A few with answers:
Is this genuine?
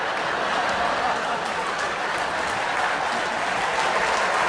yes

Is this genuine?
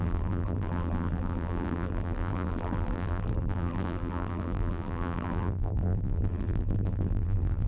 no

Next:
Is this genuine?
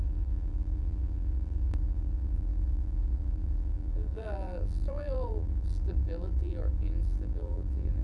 no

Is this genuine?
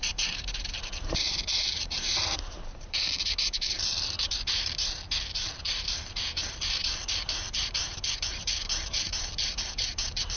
no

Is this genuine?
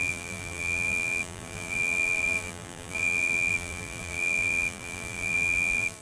no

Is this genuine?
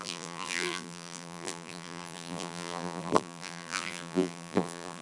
no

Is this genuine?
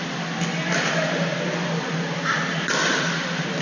no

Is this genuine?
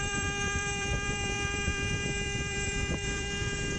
no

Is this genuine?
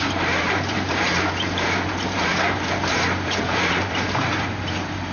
no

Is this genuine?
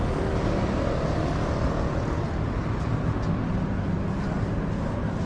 yes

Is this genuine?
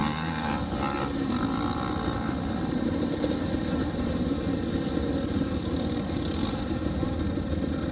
yes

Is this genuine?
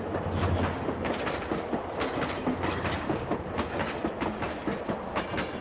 yes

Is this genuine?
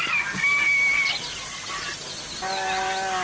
yes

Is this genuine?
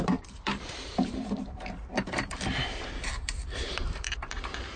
no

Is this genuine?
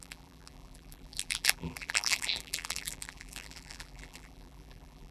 no